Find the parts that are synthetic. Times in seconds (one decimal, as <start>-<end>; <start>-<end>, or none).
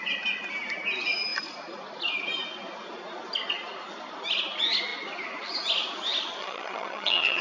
6.4-7.4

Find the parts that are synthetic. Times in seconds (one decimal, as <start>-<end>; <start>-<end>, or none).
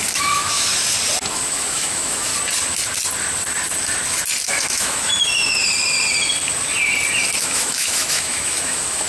0.0-0.7; 1.3-2.3; 4.5-5.1; 7.4-9.1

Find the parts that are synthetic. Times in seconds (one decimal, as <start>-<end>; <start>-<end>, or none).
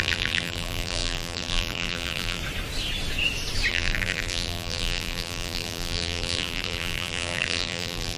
0.0-2.4; 3.7-8.2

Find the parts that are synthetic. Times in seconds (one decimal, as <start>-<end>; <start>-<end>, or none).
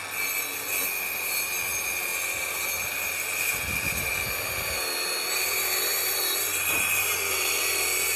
none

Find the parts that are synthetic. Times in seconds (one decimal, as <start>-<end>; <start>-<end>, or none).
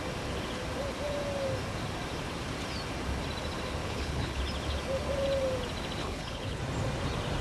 3.8-4.4; 6.0-6.6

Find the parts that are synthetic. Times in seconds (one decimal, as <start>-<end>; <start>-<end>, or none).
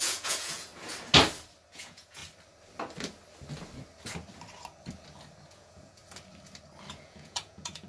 0.0-0.7; 1.7-2.2; 5.5-6.0; 6.9-7.9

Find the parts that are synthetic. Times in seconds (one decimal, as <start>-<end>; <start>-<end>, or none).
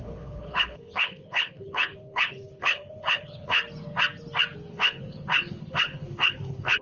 0.0-3.6; 4.7-6.8